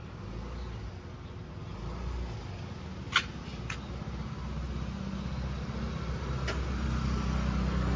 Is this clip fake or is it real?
real